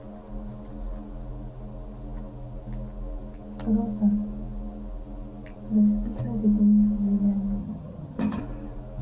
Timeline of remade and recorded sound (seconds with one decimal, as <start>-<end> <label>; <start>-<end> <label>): 0.0-7.6 recorded; 7.6-8.4 remade; 8.4-9.0 recorded

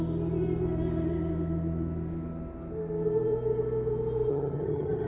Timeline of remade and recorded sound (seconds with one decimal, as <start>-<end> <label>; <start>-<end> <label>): 0.0-4.3 recorded; 4.3-5.1 remade

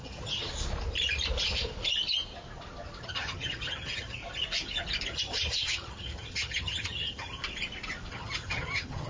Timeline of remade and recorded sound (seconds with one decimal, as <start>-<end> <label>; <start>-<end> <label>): 0.0-0.5 remade; 0.5-3.0 recorded; 3.0-4.2 remade; 4.2-5.1 recorded; 5.1-7.4 remade; 7.4-8.1 recorded; 8.1-9.1 remade

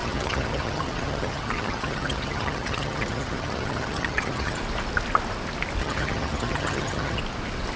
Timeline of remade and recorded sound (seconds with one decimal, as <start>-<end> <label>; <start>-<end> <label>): 0.0-4.6 remade; 4.6-5.8 recorded; 5.8-7.2 remade; 7.2-7.8 recorded